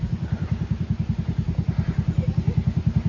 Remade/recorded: recorded